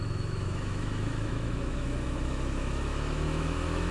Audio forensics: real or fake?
fake